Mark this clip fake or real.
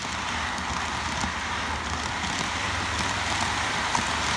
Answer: real